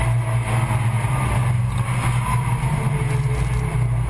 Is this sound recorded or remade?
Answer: recorded